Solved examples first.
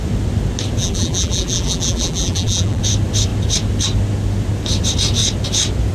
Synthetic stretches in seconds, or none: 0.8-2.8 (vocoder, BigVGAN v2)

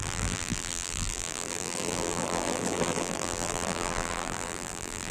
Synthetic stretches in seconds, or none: 0.0-5.1 (vocoder, BigVGAN v2)

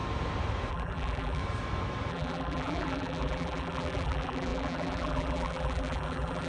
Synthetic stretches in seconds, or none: 0.7-1.4 (vocoder, BigVGAN v2); 2.1-6.5

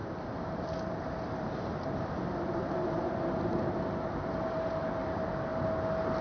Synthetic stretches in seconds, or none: 0.5-2.8 (vocoder, BigVGAN v2); 4.1-5.5

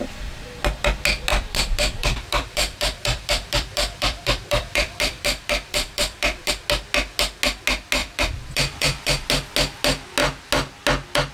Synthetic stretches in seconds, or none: 1.3-6.5 (vocoder, BigVGAN v2); 8.0-9.3

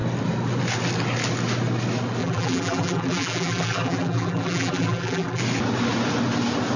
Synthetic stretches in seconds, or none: 2.2-5.4 (vocoder, BigVGAN v2)

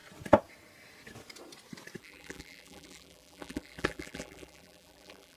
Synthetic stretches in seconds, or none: 2.0-5.4 (vocoder, BigVGAN v2)